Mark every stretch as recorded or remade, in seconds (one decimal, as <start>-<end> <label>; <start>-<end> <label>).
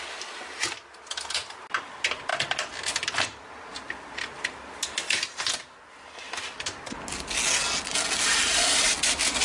0.0-9.4 recorded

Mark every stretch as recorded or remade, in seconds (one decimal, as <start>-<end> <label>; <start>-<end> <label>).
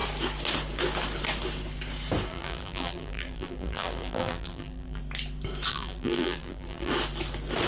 0.0-2.3 recorded; 2.3-5.0 remade; 5.0-5.7 recorded; 5.7-6.9 remade; 6.9-7.7 recorded